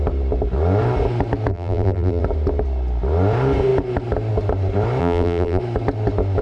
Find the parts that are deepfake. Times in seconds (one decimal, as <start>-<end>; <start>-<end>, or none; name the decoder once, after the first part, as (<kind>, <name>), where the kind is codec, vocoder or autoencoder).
1.5-2.2 (vocoder, BigVGAN v2); 5.0-5.6